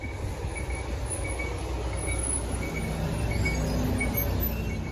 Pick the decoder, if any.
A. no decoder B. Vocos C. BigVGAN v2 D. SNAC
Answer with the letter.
A